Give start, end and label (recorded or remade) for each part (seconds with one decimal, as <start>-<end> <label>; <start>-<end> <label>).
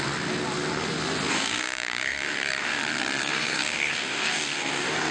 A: 0.0-1.3 recorded; 1.3-2.8 remade; 2.8-3.3 recorded; 3.3-5.1 remade